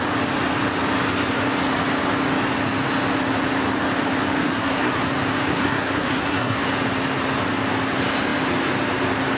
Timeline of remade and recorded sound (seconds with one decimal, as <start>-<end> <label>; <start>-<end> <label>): 0.0-4.4 recorded; 4.4-5.0 remade; 5.0-5.5 recorded; 5.5-6.6 remade; 6.6-9.4 recorded